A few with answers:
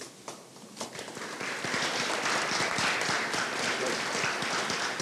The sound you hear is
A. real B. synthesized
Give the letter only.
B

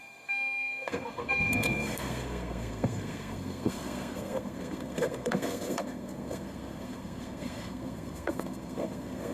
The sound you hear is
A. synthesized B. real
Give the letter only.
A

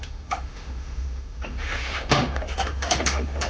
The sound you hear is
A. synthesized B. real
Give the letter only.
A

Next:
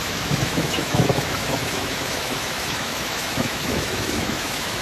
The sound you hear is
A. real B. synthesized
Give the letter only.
B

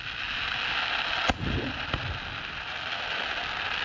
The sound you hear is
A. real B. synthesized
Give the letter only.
A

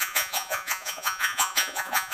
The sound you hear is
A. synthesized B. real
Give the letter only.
A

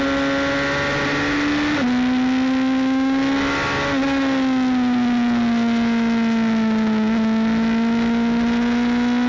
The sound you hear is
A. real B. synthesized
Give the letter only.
A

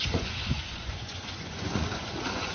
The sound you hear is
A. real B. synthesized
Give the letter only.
B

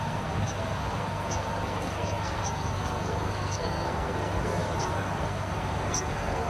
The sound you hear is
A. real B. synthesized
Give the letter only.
B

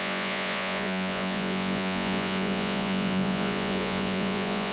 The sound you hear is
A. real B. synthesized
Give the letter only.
B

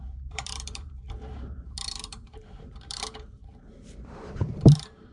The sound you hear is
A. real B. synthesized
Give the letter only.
B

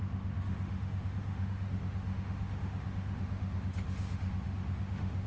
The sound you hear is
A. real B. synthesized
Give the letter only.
B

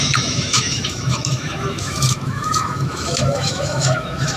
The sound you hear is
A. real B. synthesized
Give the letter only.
B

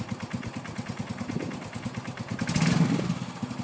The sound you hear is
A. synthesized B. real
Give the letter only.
B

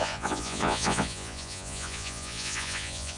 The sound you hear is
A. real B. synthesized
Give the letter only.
B